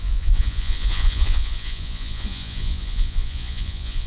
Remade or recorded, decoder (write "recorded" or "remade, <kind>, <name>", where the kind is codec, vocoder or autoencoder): remade, vocoder, Vocos